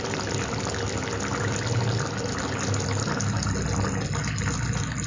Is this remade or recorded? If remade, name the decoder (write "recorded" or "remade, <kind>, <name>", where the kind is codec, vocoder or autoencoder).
recorded